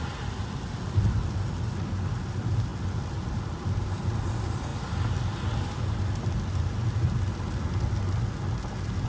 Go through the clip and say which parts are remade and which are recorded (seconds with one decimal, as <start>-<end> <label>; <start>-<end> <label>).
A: 0.0-9.1 recorded